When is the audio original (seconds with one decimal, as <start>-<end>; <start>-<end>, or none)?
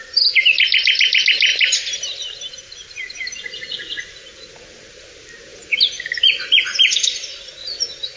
0.0-1.5; 2.5-5.5; 6.2-8.2